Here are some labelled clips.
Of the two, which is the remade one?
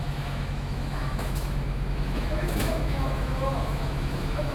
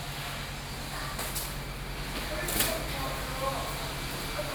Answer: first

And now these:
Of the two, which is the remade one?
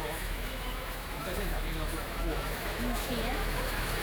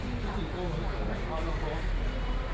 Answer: first